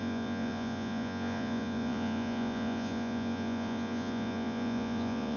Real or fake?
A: fake